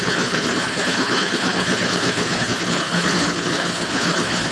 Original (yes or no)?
no